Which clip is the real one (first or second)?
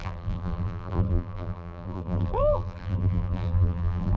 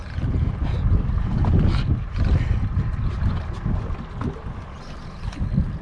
second